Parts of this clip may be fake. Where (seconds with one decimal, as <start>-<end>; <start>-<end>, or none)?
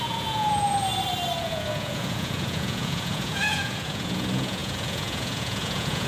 0.0-0.9; 1.4-6.1